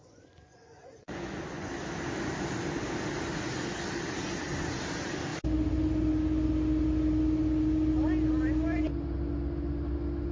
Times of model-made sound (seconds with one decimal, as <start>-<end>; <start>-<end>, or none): 0.0-1.7